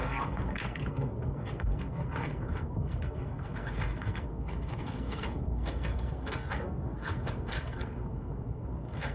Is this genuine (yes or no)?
no